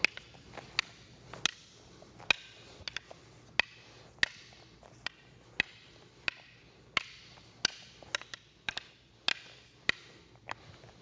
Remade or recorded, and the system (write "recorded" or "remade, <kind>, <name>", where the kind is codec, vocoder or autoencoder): recorded